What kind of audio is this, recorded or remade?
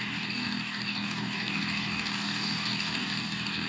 remade